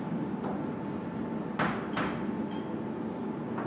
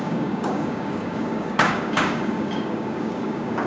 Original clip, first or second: first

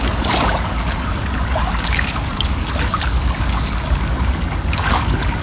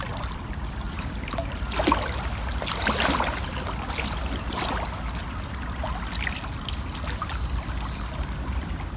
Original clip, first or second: second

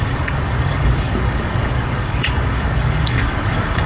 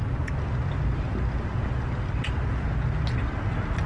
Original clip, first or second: second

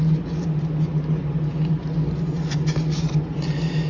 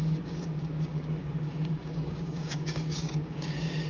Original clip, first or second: first